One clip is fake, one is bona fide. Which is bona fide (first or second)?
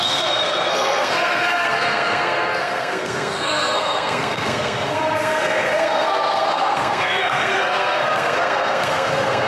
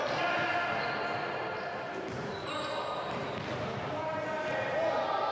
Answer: second